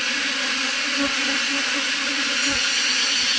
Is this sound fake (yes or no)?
no